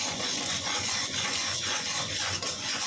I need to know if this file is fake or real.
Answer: fake